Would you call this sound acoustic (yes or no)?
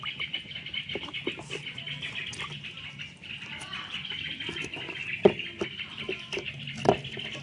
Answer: yes